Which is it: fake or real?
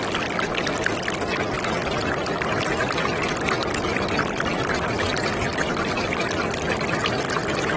real